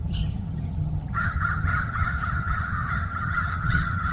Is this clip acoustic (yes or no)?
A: no